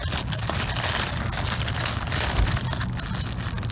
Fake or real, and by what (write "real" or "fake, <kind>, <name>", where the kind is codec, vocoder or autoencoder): real